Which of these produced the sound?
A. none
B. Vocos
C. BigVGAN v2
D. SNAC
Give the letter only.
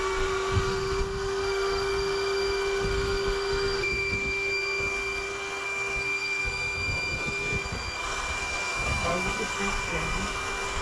D